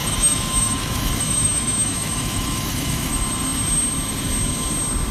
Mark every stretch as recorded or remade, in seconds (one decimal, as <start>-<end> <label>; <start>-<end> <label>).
0.0-3.1 remade; 3.1-5.1 recorded